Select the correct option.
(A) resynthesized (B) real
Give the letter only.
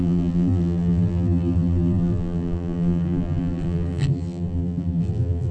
A